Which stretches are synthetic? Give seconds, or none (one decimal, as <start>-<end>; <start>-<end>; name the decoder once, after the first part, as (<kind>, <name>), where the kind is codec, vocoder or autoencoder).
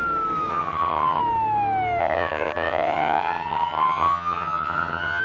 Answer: 0.5-1.2 (vocoder, HiFi-GAN); 2.0-5.2